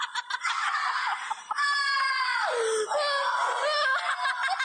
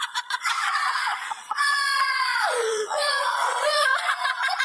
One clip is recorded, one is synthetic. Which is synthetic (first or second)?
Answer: second